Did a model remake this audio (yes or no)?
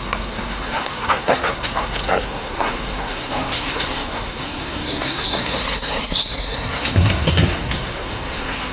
yes